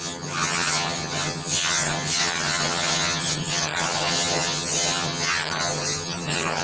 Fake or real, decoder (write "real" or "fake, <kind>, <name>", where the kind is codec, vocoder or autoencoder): fake, vocoder, HiFi-GAN